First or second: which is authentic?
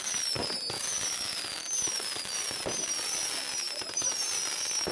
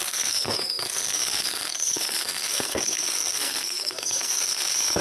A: first